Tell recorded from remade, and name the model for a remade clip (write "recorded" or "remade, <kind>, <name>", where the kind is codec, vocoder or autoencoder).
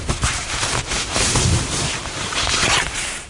remade, vocoder, BigVGAN v2